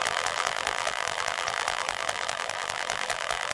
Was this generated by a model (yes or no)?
yes